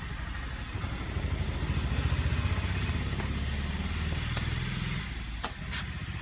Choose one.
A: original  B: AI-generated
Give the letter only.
A